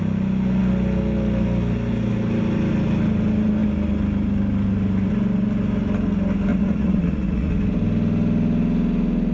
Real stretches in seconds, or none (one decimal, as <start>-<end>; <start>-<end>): 0.0-6.5; 7.5-9.3

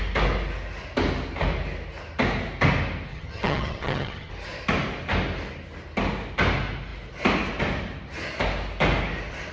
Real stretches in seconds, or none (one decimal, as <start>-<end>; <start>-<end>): 0.0-3.1; 4.3-9.5